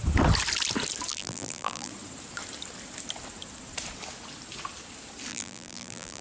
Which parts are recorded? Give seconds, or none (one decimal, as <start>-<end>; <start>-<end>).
0.0-1.1; 1.9-5.3